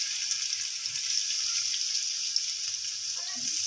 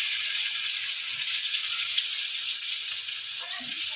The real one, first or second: first